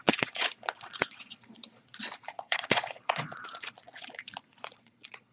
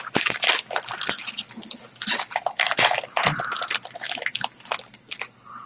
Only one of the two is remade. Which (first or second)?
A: first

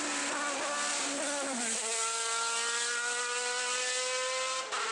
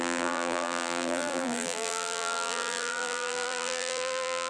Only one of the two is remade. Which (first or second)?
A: second